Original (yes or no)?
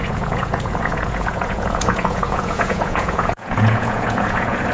no